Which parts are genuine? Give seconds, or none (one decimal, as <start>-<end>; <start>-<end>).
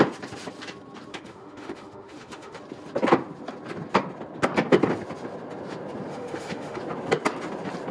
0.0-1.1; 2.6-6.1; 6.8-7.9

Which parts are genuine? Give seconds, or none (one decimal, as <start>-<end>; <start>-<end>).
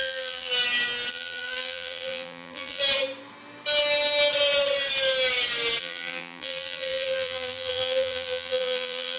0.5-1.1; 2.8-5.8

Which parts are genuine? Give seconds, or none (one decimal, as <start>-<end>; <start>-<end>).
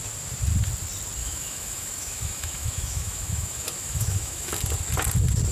0.0-1.2; 4.5-5.5